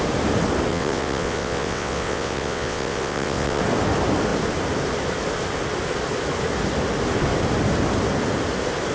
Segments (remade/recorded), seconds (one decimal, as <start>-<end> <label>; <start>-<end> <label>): 0.0-0.7 recorded; 0.7-3.6 remade; 3.6-8.9 recorded